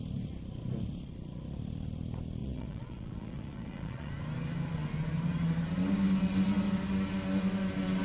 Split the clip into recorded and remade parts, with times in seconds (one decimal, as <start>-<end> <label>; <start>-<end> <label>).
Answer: 0.0-2.4 recorded; 2.4-4.1 remade; 4.1-8.0 recorded

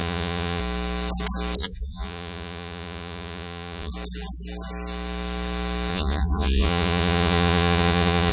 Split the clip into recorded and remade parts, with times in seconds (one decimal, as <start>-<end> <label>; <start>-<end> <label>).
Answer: 0.0-0.6 remade; 0.6-1.6 recorded; 1.6-3.9 remade; 3.9-5.9 recorded; 5.9-8.3 remade

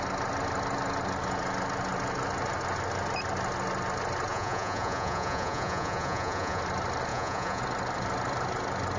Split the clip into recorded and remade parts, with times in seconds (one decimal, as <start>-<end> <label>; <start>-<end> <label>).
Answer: 0.0-4.3 recorded; 4.3-6.6 remade; 6.6-7.1 recorded; 7.1-7.6 remade; 7.6-9.0 recorded

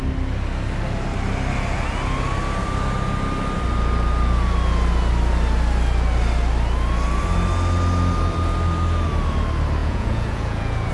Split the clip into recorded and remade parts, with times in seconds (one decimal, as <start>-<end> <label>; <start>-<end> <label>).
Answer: 0.0-9.8 recorded; 9.8-10.9 remade